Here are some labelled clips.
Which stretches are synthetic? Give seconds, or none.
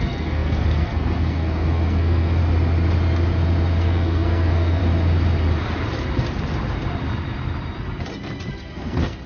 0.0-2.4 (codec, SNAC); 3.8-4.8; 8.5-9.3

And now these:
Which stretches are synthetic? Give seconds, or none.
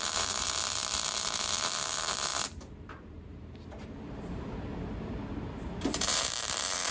0.0-6.9 (vocoder, BigVGAN v2)